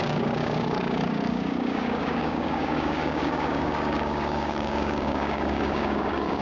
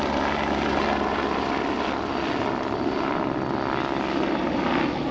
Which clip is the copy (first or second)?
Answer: first